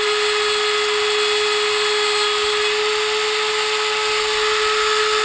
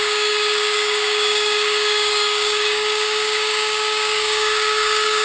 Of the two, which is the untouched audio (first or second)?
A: first